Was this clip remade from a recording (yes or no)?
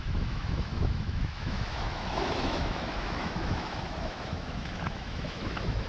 yes